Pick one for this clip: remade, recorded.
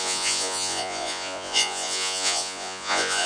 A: remade